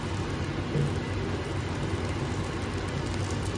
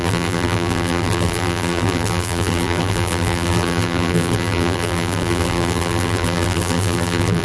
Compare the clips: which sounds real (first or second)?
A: first